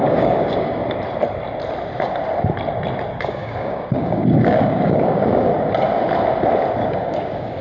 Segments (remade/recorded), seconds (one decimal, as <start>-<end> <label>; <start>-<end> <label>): 0.0-0.8 remade; 0.8-3.2 recorded; 3.2-5.5 remade; 5.5-6.9 recorded; 6.9-7.6 remade